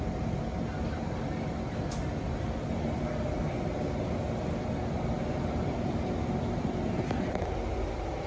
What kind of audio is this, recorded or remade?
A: recorded